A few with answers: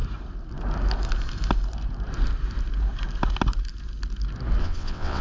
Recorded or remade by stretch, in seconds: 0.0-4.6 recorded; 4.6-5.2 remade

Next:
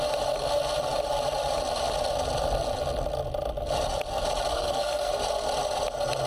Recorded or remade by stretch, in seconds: 0.0-4.5 recorded; 4.5-5.1 remade; 5.1-6.3 recorded